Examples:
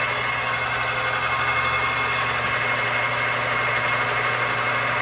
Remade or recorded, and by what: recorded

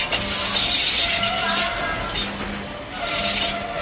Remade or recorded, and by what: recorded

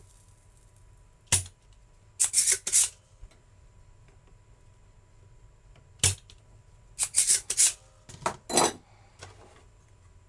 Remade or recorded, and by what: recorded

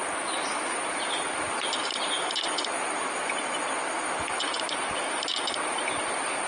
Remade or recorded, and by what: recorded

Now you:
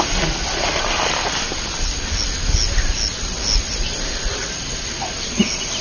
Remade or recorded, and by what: recorded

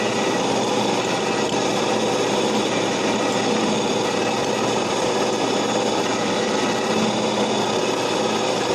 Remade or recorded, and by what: recorded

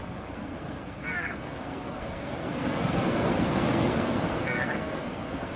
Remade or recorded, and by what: remade, codec, SNAC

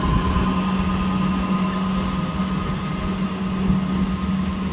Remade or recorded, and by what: recorded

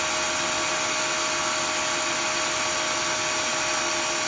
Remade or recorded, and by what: recorded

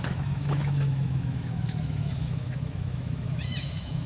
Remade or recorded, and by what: remade, autoencoder, DAC-VAE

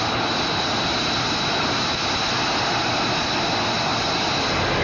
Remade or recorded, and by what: recorded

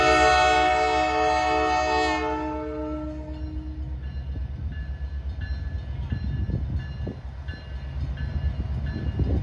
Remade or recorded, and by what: recorded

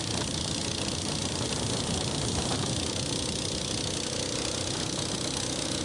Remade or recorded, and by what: recorded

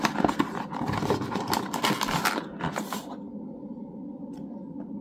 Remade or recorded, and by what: recorded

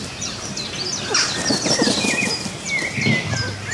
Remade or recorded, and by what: recorded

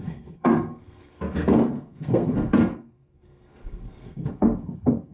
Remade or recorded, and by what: remade, codec, SNAC